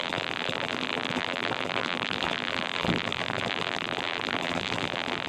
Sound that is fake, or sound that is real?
fake